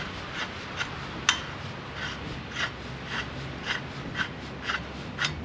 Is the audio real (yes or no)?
yes